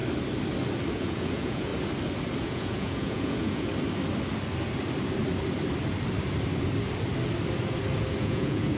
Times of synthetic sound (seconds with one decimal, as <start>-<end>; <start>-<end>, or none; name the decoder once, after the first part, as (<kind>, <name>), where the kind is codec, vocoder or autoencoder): 0.9-1.7 (vocoder, Vocos); 2.4-3.7; 8.2-8.8